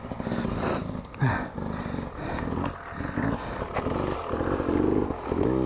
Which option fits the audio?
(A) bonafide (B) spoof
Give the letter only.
A